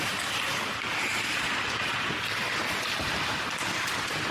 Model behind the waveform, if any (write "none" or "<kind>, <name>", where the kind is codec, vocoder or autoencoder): none